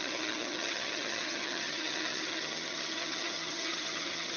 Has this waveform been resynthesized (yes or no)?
yes